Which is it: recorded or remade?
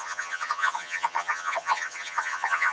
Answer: remade